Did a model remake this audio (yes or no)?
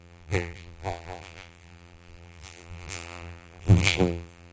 yes